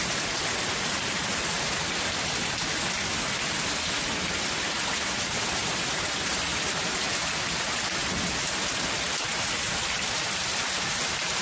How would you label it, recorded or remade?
recorded